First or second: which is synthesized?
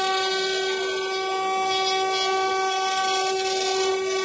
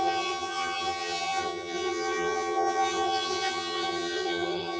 second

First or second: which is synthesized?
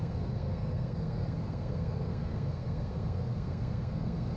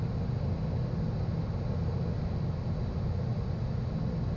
first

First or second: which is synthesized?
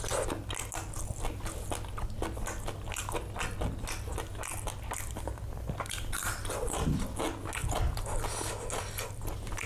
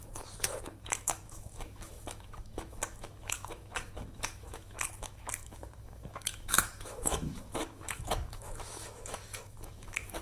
second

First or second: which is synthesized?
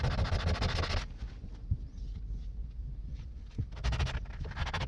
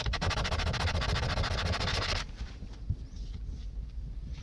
second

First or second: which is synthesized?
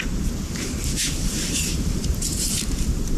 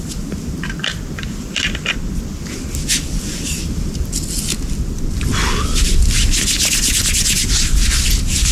first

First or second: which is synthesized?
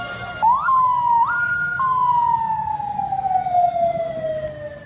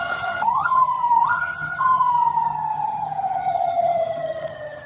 second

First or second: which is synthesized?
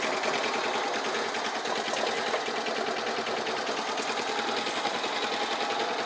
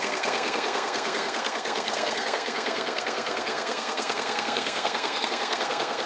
second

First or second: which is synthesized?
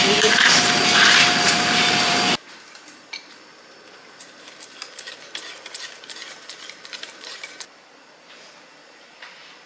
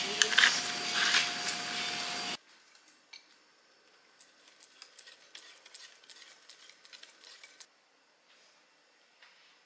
first